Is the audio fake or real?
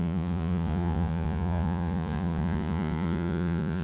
fake